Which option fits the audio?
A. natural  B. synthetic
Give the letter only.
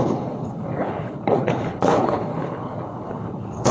B